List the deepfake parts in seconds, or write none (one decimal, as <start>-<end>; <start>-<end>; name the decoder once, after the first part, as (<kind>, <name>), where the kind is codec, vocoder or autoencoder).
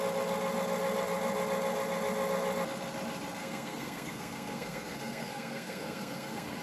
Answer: 3.4-6.6 (codec, SNAC)